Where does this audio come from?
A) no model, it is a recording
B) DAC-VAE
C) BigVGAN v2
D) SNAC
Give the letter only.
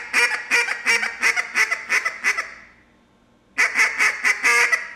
A